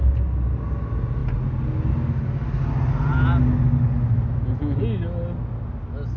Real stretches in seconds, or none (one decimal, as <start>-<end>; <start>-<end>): 0.0-6.2